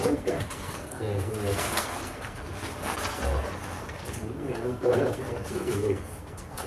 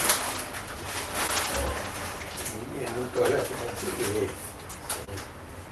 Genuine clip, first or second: second